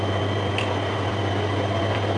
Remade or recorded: recorded